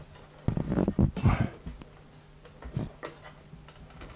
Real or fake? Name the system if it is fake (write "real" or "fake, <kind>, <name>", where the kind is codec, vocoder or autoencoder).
real